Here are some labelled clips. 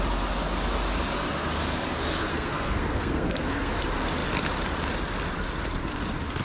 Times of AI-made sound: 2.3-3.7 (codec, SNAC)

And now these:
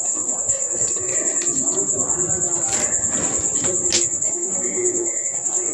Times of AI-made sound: 0.0-1.1 (codec, SNAC); 4.0-5.7

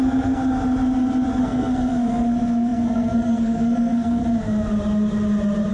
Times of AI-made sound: 0.0-0.4 (codec, SNAC); 1.4-4.2

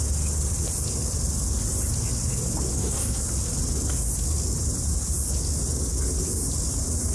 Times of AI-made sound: 2.7-3.2 (codec, SNAC)